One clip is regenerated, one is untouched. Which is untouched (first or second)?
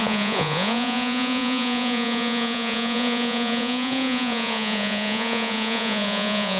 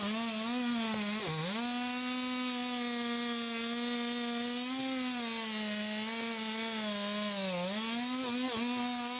second